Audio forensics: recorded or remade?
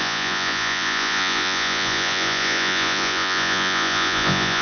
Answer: remade